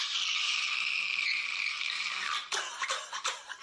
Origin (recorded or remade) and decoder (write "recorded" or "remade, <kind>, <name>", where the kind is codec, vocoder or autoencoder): remade, vocoder, BigVGAN v2